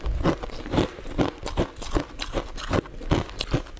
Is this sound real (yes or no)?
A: yes